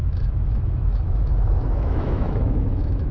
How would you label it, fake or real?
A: fake